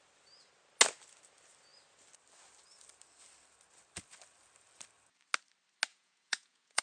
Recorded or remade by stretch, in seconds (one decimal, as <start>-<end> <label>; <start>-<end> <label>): 0.0-5.9 recorded; 5.9-6.8 remade